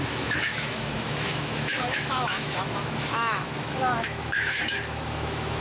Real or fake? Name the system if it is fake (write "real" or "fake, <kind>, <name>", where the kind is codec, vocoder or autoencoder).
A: fake, autoencoder, DAC-VAE